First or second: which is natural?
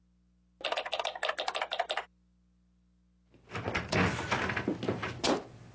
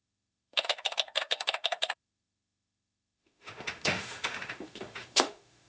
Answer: first